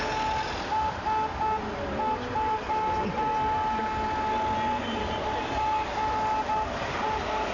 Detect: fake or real real